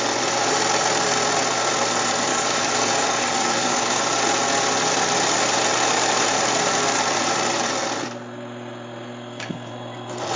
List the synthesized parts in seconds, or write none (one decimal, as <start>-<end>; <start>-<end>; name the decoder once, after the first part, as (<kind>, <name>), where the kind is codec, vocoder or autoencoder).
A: 2.3-4.0 (codec, DAC)